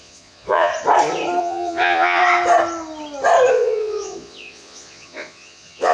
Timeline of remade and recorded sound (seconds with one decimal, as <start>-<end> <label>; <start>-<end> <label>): 0.0-0.7 remade; 0.7-1.4 recorded; 1.4-2.2 remade; 2.2-3.5 recorded; 3.5-5.9 remade